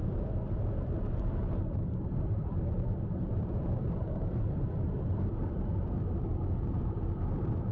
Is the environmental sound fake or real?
fake